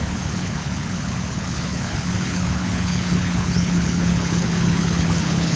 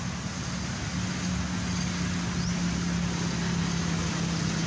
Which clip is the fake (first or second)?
first